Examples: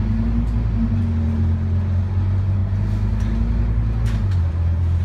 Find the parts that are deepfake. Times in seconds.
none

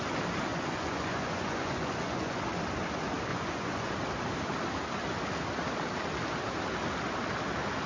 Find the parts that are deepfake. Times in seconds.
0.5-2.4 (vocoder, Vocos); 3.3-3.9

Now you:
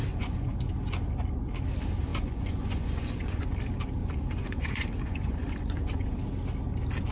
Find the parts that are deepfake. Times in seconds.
0.0-0.6 (vocoder, Vocos); 2.1-3.5; 4.0-6.2

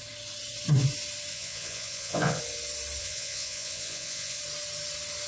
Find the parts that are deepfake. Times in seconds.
1.3-2.4 (vocoder, Vocos); 3.0-4.4